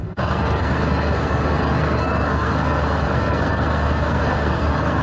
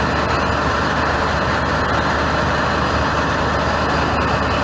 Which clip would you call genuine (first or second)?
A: second